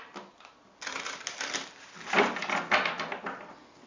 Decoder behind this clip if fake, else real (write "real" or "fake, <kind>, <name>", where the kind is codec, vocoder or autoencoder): real